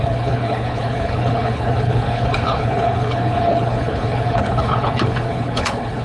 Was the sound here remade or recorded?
remade